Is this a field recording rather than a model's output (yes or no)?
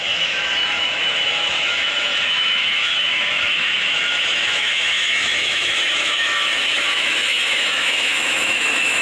no